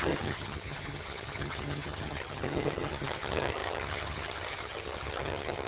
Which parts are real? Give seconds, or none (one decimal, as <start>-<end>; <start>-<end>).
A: none